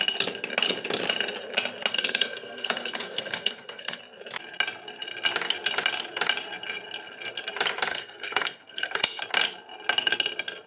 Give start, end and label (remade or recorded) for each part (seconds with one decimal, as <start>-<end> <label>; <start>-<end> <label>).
0.0-1.9 recorded; 1.9-4.0 remade; 4.0-7.9 recorded; 7.9-9.2 remade; 9.2-10.7 recorded